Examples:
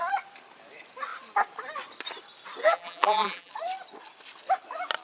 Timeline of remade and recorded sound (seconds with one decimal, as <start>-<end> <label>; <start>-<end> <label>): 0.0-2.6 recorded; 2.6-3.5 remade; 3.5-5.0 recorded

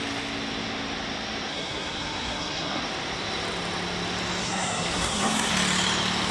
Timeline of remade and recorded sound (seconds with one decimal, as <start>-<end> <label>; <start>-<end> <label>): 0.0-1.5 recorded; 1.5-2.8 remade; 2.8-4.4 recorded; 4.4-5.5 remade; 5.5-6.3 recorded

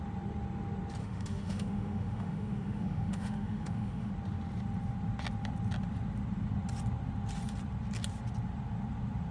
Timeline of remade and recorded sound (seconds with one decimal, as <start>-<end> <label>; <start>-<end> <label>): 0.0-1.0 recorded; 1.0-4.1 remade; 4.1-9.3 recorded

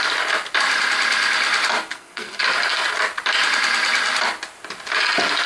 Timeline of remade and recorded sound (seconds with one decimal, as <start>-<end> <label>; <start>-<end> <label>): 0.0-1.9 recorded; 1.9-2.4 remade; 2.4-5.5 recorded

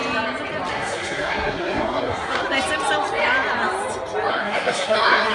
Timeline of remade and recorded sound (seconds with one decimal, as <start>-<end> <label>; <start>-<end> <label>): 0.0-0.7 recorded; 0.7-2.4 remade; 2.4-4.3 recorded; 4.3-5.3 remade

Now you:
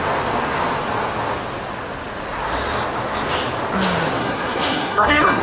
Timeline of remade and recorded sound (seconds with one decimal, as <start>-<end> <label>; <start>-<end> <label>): 0.0-4.2 recorded; 4.2-5.4 remade

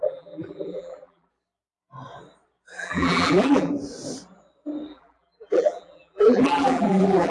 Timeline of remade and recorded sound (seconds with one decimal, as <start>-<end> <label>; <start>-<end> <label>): 0.0-1.3 remade; 1.3-2.8 recorded; 2.8-3.7 remade; 3.7-4.9 recorded; 4.9-7.3 remade